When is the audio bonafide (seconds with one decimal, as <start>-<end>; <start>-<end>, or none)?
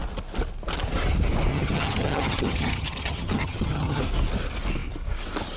0.0-1.5; 4.0-5.6